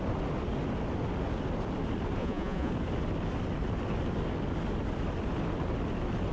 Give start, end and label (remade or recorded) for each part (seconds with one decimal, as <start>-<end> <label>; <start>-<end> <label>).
0.0-2.2 recorded; 2.2-2.7 remade; 2.7-6.3 recorded